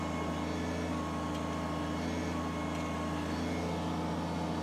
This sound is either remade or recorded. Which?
recorded